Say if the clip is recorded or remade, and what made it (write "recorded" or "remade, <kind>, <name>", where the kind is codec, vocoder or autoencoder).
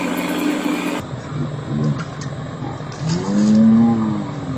recorded